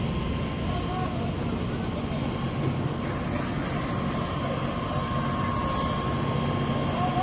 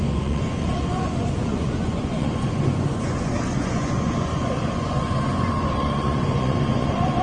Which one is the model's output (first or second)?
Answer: second